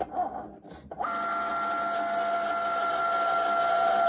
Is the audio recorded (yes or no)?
yes